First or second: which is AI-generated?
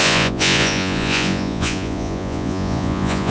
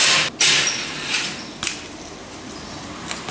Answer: first